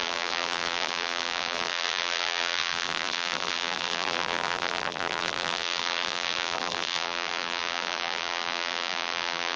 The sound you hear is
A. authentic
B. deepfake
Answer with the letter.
B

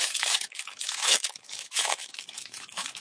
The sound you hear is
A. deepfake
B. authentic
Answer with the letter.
A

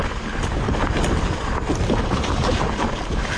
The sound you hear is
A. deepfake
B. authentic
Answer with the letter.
B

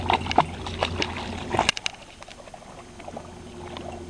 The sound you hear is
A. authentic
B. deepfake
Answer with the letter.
A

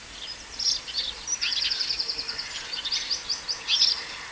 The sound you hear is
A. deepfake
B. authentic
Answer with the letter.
B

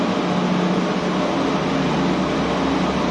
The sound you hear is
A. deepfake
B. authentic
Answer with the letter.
B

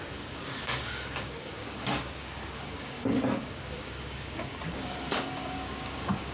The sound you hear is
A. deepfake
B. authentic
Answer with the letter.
A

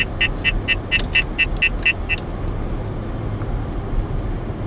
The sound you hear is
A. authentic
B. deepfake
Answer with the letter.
A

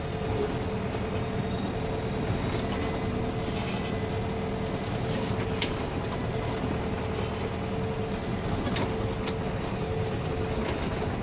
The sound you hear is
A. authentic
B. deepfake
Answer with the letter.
A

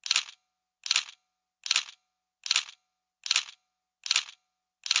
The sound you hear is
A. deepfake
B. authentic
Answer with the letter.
B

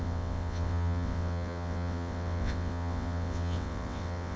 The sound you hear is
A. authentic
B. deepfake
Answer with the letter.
B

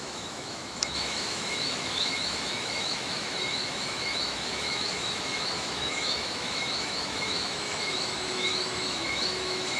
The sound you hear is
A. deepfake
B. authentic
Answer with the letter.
A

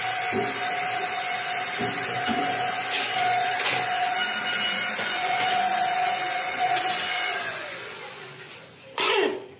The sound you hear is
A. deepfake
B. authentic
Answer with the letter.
A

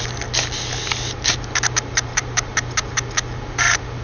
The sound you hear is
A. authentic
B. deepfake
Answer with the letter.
A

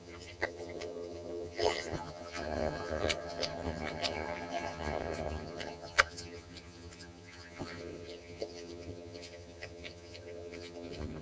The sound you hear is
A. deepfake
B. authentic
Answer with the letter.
A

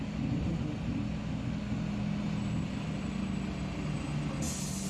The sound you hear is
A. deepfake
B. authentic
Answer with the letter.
B